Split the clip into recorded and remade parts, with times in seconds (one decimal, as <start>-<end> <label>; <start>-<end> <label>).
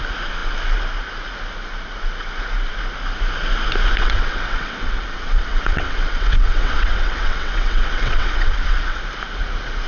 0.0-4.0 recorded; 4.0-9.0 remade; 9.0-9.9 recorded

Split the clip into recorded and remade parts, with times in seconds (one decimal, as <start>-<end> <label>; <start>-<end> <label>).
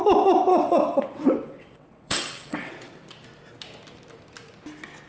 0.0-0.5 recorded; 0.5-2.7 remade; 2.7-5.1 recorded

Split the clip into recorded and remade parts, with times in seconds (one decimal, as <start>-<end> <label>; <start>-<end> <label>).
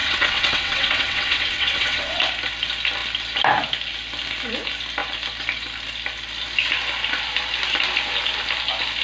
0.0-2.2 remade; 2.2-9.0 recorded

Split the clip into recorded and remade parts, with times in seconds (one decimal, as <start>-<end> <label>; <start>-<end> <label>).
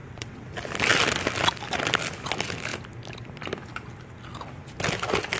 0.0-0.5 remade; 0.5-5.4 recorded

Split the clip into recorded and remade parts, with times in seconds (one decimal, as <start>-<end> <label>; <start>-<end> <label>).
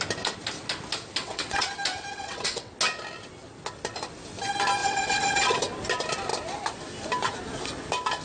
0.0-1.2 recorded; 1.2-1.7 remade; 1.7-2.1 recorded; 2.1-2.7 remade; 2.7-4.8 recorded; 4.8-5.6 remade; 5.6-8.2 recorded